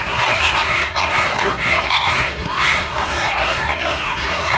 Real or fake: fake